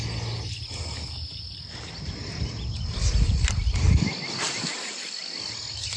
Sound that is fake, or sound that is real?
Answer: real